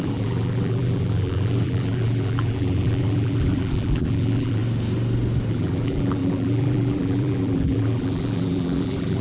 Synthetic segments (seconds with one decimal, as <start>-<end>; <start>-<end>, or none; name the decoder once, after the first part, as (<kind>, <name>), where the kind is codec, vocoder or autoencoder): 0.0-4.6 (vocoder, BigVGAN v2); 5.5-9.2

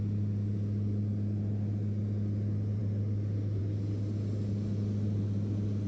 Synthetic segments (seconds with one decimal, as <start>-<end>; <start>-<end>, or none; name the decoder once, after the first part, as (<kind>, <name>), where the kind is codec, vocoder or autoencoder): none

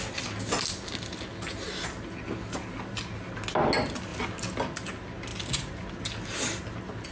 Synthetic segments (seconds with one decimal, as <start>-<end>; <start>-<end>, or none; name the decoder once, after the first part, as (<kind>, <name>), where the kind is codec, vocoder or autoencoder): none

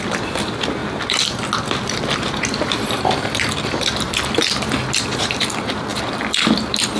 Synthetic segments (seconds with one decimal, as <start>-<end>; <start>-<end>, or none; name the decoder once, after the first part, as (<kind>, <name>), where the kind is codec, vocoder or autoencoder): none

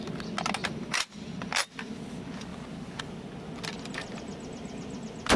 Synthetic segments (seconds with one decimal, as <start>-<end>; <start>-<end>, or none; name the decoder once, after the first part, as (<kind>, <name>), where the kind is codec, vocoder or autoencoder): none